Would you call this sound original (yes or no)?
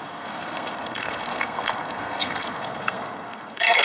no